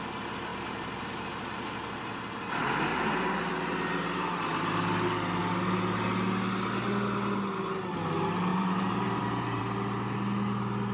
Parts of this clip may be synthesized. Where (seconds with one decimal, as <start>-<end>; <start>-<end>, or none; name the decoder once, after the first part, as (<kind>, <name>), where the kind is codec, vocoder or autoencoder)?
0.5-1.3 (vocoder, BigVGAN v2); 2.9-3.4; 8.5-9.6